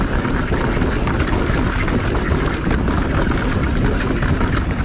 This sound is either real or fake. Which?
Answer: real